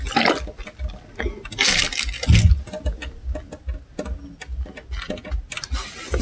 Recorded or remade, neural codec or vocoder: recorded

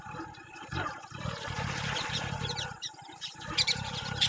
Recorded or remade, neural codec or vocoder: recorded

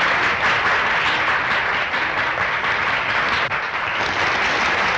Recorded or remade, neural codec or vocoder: recorded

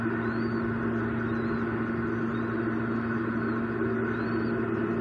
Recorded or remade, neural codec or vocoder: recorded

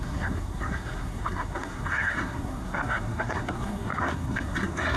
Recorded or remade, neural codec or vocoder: remade, codec, SNAC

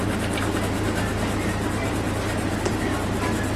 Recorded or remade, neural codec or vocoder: recorded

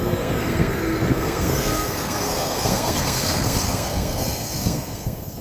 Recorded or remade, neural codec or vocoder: remade, codec, SNAC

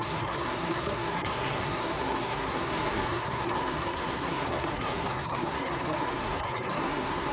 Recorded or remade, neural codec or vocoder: remade, codec, SNAC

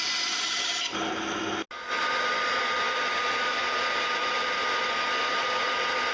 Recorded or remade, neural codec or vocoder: recorded